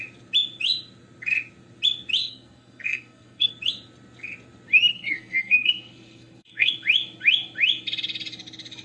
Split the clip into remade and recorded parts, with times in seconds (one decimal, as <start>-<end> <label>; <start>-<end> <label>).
0.0-2.2 recorded; 2.2-3.5 remade; 3.5-4.9 recorded; 4.9-6.7 remade; 6.7-8.8 recorded